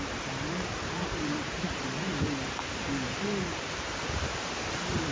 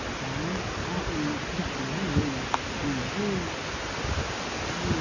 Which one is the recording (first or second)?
second